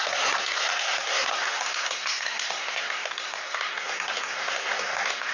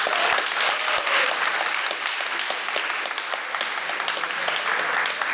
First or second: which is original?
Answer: second